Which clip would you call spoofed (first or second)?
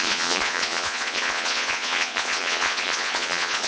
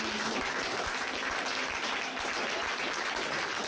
first